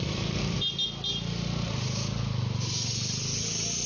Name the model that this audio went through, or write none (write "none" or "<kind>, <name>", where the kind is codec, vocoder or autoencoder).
none